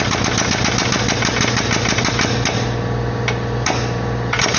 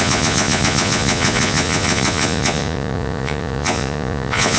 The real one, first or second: first